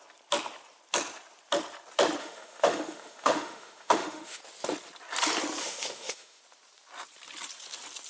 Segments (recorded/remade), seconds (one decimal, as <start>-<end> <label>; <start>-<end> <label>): 0.0-2.2 recorded; 2.2-4.4 remade; 4.4-5.6 recorded; 5.6-6.4 remade; 6.4-8.1 recorded